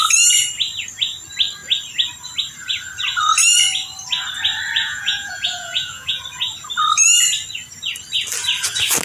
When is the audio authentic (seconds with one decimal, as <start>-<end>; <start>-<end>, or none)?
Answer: 0.0-4.8; 6.2-9.0